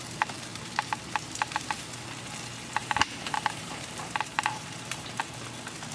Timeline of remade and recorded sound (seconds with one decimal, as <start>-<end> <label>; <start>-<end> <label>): 0.0-0.5 recorded; 0.5-1.8 remade; 1.8-2.8 recorded; 2.8-5.2 remade; 5.2-5.9 recorded